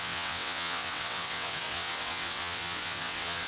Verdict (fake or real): fake